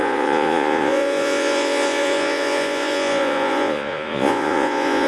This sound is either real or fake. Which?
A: fake